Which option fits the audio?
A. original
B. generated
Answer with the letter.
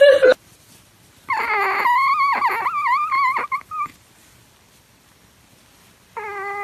A